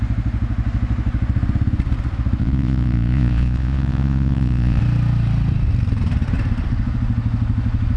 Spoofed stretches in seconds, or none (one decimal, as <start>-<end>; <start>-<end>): 2.4-4.8